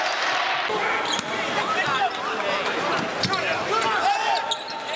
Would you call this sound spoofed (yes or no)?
no